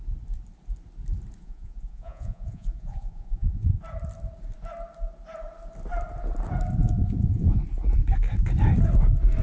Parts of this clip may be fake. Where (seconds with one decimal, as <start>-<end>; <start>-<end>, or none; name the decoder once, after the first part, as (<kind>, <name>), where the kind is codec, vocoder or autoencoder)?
1.4-3.8 (vocoder, Vocos); 6.8-7.6